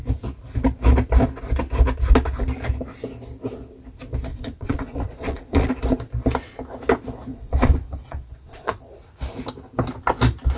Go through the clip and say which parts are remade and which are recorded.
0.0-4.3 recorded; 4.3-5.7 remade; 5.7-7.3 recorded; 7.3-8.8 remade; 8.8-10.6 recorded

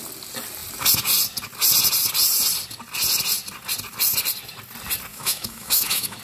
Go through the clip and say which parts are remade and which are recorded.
0.0-5.1 recorded; 5.1-6.2 remade

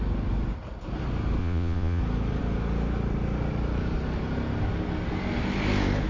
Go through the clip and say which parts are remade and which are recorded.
0.0-1.4 recorded; 1.4-2.0 remade; 2.0-6.1 recorded

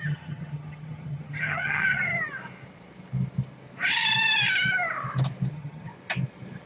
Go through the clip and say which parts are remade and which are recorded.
0.0-2.1 remade; 2.1-5.5 recorded; 5.5-5.9 remade; 5.9-6.7 recorded

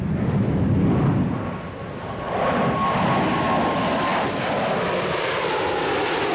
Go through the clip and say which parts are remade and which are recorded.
0.0-6.3 recorded

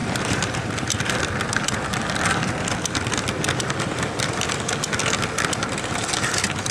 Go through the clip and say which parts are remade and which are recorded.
0.0-1.0 remade; 1.0-6.7 recorded